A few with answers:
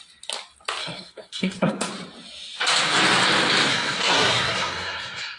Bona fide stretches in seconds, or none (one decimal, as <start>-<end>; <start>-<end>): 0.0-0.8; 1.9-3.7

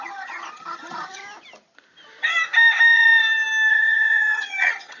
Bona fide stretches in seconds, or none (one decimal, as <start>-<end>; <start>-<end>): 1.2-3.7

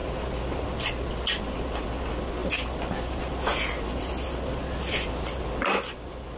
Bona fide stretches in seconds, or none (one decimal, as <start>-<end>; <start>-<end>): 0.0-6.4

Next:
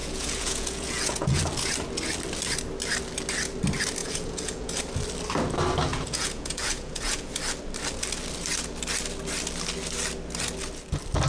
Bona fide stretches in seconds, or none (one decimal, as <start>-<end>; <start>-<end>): 1.4-4.0; 4.7-5.9; 7.3-11.3

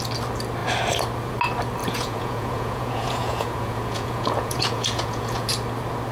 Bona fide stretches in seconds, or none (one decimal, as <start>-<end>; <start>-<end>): 0.0-1.8; 5.5-6.1

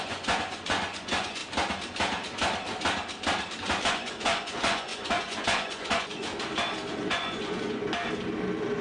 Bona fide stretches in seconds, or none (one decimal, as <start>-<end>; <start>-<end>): 1.4-3.9; 6.3-6.9; 7.8-8.8